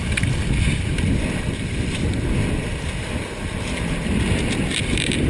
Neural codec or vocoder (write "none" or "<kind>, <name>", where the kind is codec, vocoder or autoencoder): none